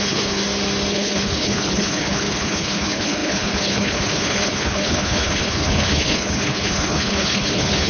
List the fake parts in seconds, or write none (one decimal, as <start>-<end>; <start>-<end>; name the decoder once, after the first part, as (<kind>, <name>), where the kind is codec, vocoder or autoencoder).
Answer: 0.0-0.4 (codec, HILCodec); 0.9-7.9